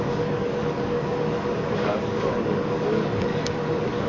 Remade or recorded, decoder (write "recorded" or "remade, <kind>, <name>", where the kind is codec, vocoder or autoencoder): remade, codec, DAC